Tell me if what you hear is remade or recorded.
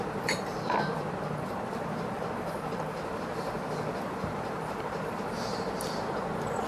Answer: remade